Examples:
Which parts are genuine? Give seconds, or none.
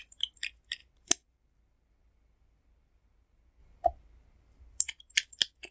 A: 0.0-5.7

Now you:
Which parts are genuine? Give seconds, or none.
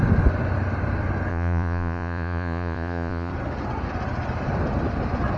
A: 0.0-1.3; 3.3-5.4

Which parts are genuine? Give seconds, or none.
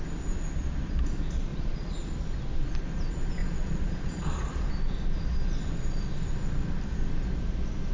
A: 0.0-1.5; 2.1-3.4; 4.7-7.9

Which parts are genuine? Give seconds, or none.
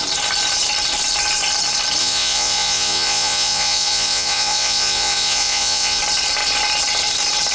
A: 0.0-2.0; 6.0-7.5